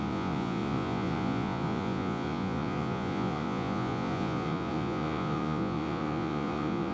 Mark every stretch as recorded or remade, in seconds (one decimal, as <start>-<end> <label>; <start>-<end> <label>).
0.0-6.9 remade